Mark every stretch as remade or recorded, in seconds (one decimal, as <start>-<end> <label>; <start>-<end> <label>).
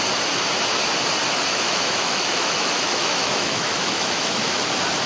0.0-1.5 recorded; 1.5-4.6 remade; 4.6-5.1 recorded